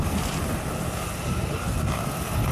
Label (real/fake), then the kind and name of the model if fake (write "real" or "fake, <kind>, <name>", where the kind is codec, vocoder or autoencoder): fake, vocoder, BigVGAN v2